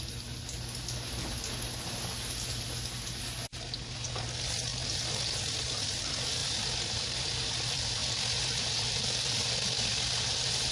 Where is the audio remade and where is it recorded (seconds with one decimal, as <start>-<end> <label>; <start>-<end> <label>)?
0.0-4.7 recorded; 4.7-5.7 remade; 5.7-6.4 recorded; 6.4-7.2 remade; 7.2-10.7 recorded